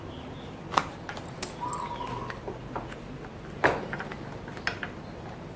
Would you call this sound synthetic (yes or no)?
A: no